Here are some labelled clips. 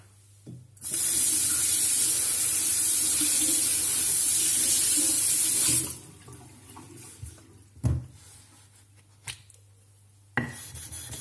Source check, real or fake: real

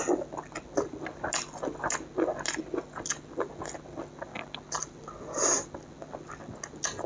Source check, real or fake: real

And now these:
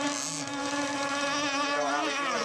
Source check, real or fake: real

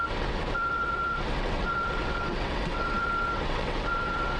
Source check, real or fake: fake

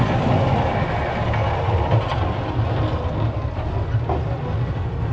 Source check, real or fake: real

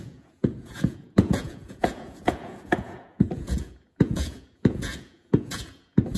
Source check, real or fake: fake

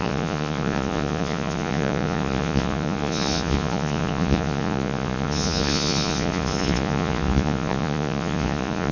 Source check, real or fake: fake